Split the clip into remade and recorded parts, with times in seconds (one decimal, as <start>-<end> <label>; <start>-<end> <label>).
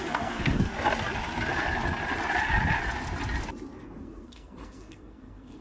0.0-0.7 remade; 0.7-3.8 recorded; 3.8-5.6 remade